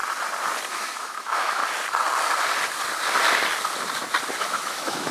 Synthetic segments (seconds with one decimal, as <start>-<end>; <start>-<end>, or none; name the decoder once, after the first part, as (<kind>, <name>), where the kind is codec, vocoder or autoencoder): 0.7-1.6 (autoencoder, DAC-VAE); 4.4-5.1